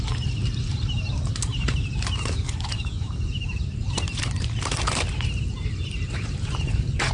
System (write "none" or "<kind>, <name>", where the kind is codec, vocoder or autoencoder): vocoder, BigVGAN v2